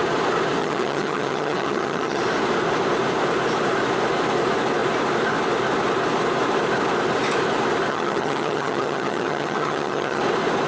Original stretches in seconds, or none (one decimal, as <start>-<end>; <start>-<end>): 0.0-0.6; 2.2-7.9; 10.2-10.7